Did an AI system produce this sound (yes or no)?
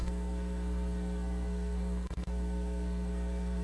yes